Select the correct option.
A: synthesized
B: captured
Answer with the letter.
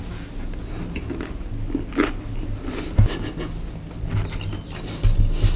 B